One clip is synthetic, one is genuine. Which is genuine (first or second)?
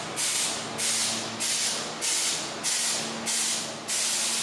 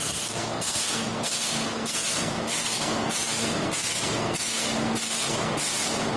first